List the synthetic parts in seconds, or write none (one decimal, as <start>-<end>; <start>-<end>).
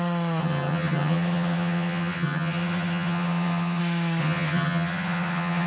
0.4-3.8; 4.2-5.7